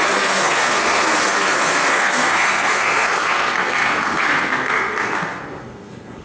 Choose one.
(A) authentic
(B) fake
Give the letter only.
B